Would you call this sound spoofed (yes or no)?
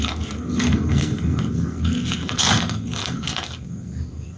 yes